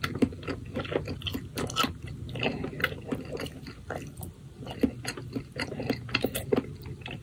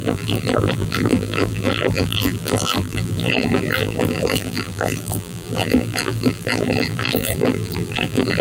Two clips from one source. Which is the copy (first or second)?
second